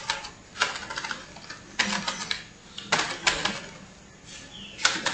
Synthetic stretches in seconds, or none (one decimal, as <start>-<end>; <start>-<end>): none